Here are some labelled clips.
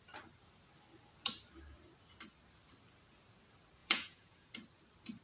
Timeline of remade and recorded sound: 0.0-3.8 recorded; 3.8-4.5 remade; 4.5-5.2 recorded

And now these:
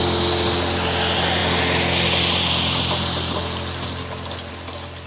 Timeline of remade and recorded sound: 0.0-5.1 recorded

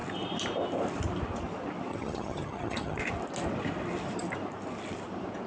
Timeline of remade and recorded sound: 0.0-1.9 recorded; 1.9-3.0 remade; 3.0-5.5 recorded

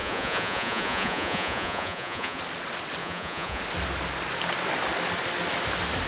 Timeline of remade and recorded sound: 0.0-2.4 remade; 2.4-3.0 recorded; 3.0-3.6 remade; 3.6-6.1 recorded

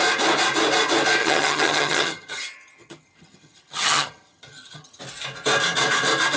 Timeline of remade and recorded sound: 0.0-1.2 recorded; 1.2-5.0 remade; 5.0-6.4 recorded